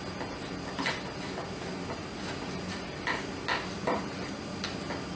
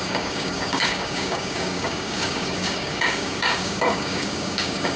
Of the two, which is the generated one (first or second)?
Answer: second